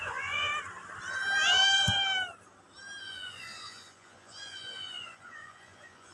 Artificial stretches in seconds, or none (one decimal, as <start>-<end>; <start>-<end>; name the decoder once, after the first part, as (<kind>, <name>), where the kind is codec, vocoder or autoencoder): 0.0-0.5 (vocoder, Vocos); 3.0-6.1